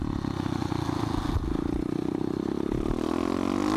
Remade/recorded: recorded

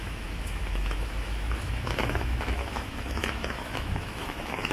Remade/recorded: remade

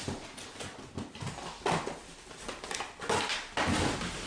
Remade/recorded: recorded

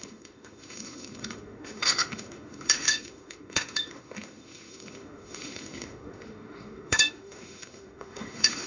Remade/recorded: remade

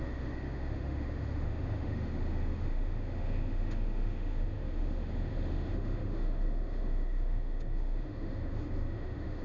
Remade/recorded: remade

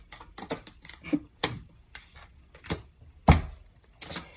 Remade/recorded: recorded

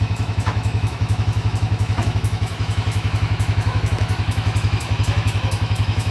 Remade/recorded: remade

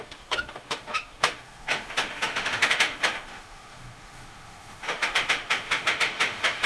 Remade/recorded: remade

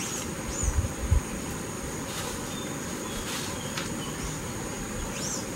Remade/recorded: recorded